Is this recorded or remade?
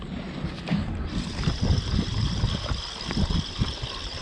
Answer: recorded